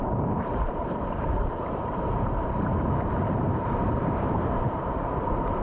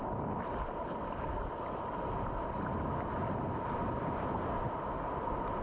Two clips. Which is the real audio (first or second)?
second